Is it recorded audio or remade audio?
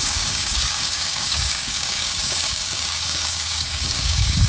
remade